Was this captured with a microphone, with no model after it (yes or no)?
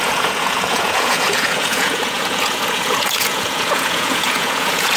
no